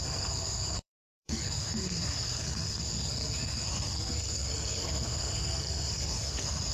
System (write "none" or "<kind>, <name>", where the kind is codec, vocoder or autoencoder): codec, SNAC